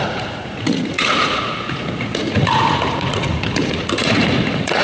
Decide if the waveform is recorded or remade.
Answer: remade